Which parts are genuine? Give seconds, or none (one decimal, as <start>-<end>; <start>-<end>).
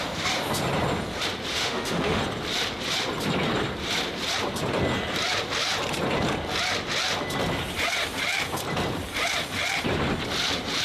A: 0.0-1.5; 2.2-10.8